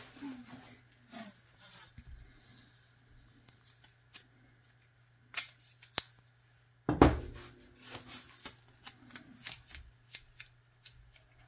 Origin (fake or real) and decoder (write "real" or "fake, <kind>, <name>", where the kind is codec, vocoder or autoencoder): real